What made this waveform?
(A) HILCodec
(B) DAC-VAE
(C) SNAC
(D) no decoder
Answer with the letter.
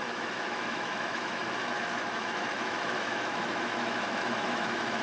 B